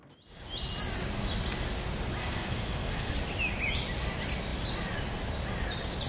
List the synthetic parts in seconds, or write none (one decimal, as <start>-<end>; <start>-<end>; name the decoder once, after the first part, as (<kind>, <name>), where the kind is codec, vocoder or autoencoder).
2.2-3.1 (codec, SNAC)